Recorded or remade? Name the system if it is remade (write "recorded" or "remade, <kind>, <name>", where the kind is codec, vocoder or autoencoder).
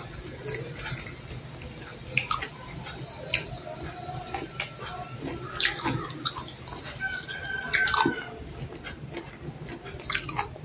recorded